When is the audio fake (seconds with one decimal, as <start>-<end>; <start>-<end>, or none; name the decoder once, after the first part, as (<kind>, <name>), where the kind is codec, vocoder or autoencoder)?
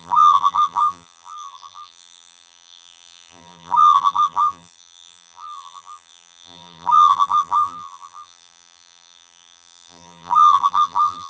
0.0-11.3 (vocoder, BigVGAN v2)